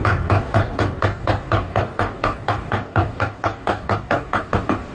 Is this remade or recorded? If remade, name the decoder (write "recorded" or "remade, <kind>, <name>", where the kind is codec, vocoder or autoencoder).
remade, codec, DAC